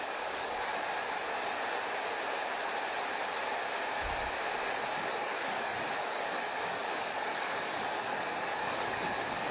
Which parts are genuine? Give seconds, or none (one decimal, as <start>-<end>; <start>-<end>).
0.7-5.1